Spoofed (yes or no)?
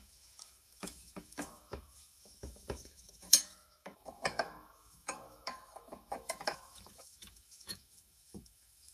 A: yes